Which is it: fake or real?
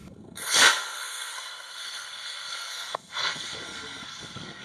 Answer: fake